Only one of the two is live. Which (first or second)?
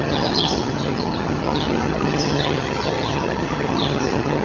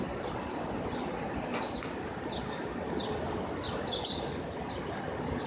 second